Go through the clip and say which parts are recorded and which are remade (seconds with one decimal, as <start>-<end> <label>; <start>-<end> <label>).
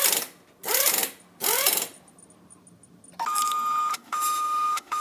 0.0-3.9 recorded; 3.9-5.0 remade